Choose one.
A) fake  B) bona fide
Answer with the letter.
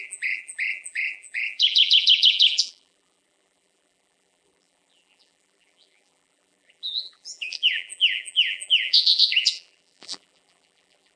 A